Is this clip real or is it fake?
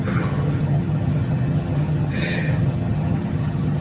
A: fake